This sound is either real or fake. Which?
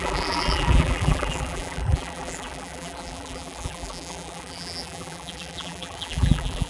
fake